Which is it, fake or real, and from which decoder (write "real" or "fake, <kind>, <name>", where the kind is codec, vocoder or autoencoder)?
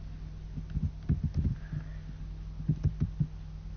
real